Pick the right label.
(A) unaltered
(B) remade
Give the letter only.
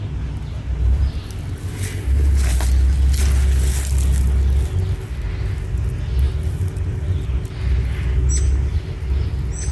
A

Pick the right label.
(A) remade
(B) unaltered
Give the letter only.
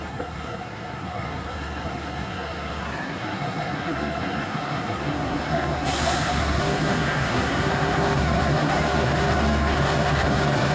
A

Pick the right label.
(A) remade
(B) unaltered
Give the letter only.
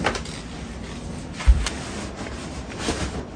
B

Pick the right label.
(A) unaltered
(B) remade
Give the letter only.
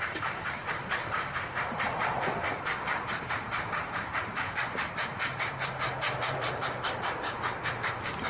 B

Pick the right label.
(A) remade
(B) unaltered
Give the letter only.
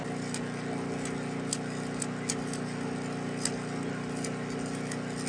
B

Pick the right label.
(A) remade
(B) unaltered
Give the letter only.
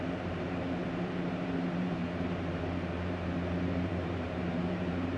A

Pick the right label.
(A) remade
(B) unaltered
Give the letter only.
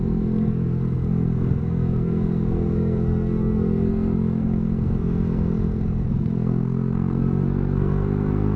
A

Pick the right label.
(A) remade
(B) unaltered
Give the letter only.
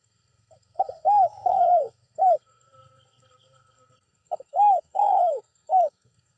A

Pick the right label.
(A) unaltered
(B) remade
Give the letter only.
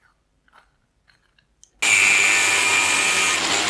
A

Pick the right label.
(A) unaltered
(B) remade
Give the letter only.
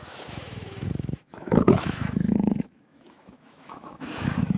B